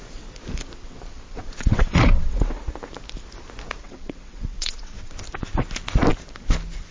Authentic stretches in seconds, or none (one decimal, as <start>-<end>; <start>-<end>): 0.0-1.3; 2.6-3.8; 5.1-6.9